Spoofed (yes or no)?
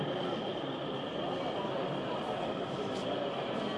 no